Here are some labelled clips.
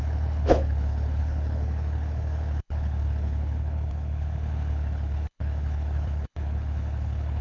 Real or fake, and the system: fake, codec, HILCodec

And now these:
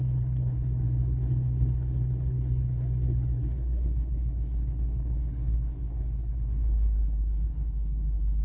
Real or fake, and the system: fake, codec, HILCodec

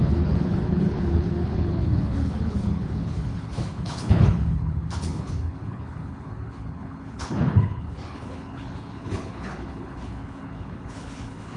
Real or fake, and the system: fake, codec, HILCodec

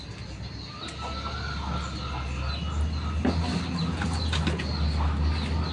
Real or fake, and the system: real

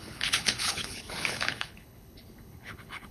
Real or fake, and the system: fake, codec, HILCodec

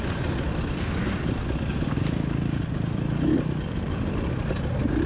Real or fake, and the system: real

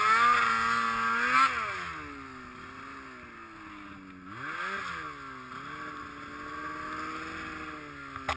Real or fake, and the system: real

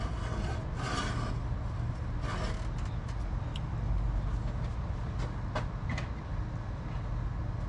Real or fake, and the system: real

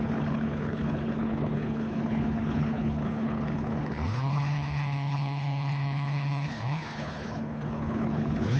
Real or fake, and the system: fake, codec, HILCodec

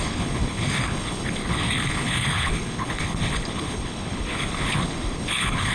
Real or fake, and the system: fake, codec, HILCodec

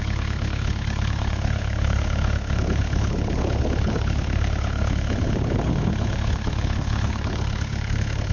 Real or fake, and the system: fake, codec, HILCodec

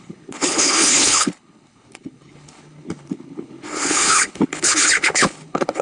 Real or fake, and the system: fake, codec, HILCodec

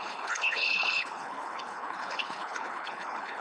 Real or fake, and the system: fake, codec, HILCodec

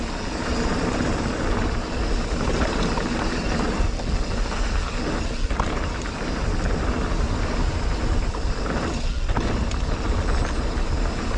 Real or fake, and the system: real